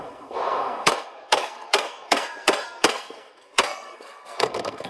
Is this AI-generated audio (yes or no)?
yes